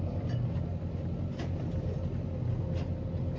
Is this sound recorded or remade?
recorded